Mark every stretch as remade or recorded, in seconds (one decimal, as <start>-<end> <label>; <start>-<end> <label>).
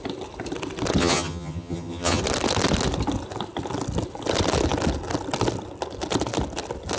0.0-1.0 recorded; 1.0-2.2 remade; 2.2-7.0 recorded